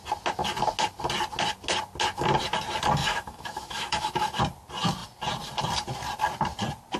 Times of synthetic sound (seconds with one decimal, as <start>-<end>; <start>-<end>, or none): 3.0-4.4